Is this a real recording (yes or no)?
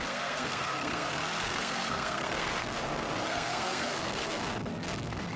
no